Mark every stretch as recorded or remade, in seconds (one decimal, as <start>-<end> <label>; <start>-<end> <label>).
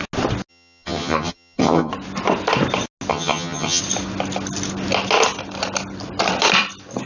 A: 0.0-0.5 recorded; 0.5-1.9 remade; 1.9-3.1 recorded; 3.1-3.8 remade; 3.8-7.1 recorded